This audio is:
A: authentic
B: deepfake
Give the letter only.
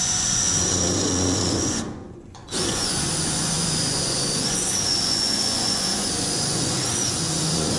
B